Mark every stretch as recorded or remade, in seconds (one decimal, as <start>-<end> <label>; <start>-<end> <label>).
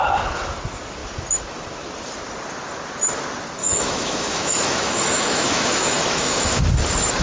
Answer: 0.0-3.6 recorded; 3.6-6.6 remade; 6.6-7.2 recorded